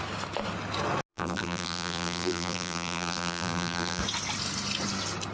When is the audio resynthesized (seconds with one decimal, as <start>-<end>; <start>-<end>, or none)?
1.1-4.0